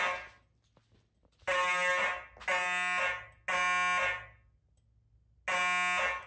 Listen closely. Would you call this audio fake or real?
real